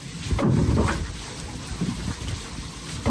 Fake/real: real